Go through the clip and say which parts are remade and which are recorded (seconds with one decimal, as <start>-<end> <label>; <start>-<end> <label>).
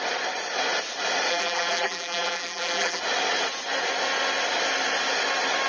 0.0-1.3 recorded; 1.3-3.0 remade; 3.0-5.7 recorded